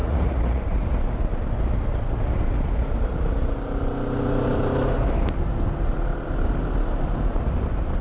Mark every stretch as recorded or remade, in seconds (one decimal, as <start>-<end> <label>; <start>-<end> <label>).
0.0-0.6 remade; 0.6-8.0 recorded

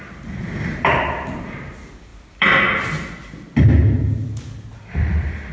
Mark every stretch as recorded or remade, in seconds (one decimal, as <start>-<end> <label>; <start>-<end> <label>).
0.0-5.5 recorded

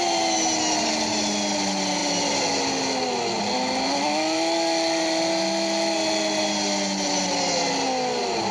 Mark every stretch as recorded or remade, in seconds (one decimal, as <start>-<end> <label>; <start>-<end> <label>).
0.0-8.5 recorded

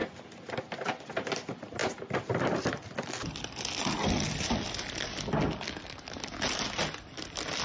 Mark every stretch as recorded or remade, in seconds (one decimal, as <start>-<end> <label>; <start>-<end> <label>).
0.0-7.6 recorded

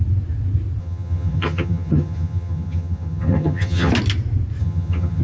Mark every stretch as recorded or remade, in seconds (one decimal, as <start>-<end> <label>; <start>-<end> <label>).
0.0-0.8 recorded; 0.8-3.9 remade; 3.9-4.6 recorded; 4.6-5.2 remade

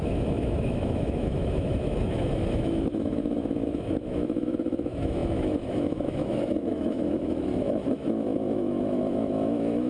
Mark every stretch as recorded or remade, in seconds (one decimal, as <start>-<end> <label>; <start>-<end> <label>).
0.0-9.9 remade

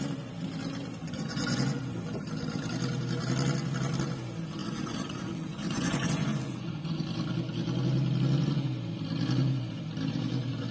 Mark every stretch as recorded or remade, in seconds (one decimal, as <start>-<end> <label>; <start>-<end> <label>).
0.0-1.0 recorded; 1.0-1.8 remade; 1.8-4.6 recorded; 4.6-7.0 remade; 7.0-10.7 recorded